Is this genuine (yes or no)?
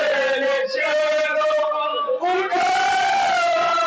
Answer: yes